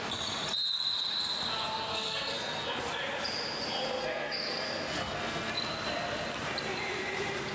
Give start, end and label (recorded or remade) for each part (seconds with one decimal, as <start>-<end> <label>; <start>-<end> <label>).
0.0-1.9 recorded; 1.9-2.8 remade; 2.8-4.0 recorded; 4.0-5.5 remade; 5.5-7.5 recorded